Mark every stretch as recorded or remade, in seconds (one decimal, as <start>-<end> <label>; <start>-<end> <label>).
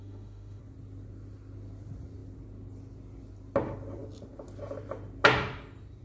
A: 0.0-0.6 remade; 0.6-6.0 recorded